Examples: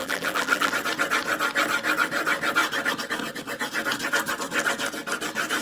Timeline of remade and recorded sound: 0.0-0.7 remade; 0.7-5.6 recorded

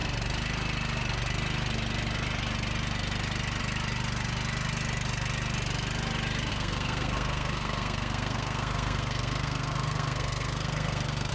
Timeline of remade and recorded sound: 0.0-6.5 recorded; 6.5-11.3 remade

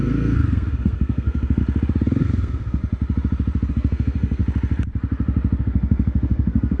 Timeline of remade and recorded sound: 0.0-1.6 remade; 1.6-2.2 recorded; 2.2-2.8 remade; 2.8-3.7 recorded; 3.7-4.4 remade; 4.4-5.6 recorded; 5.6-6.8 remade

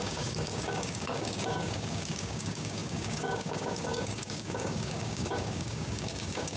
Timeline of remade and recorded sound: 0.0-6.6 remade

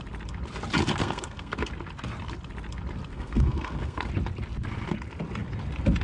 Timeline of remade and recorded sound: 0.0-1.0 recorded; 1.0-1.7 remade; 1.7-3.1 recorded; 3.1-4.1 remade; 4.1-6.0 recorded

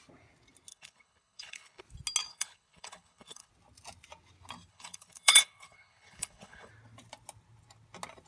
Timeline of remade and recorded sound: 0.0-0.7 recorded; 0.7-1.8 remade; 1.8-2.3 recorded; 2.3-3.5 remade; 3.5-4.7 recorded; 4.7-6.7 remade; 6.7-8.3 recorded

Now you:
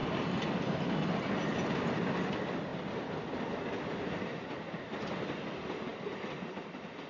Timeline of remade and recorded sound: 0.0-7.1 recorded